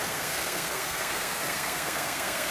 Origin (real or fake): fake